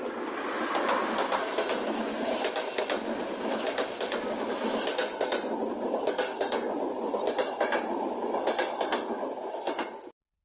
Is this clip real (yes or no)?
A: yes